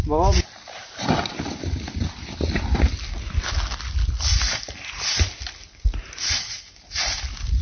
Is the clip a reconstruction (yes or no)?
no